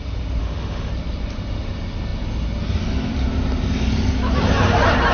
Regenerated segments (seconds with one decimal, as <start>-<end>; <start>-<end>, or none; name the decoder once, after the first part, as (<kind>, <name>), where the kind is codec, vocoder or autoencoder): 0.4-0.9 (autoencoder, DAC-VAE)